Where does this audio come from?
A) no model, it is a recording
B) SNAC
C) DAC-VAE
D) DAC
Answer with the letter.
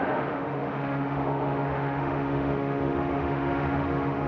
C